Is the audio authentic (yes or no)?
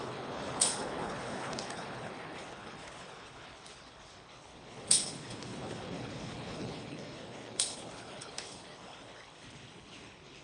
no